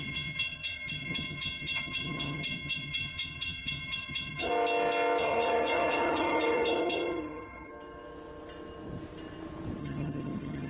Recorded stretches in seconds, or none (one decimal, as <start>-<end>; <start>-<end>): 4.5-5.2; 7.7-9.8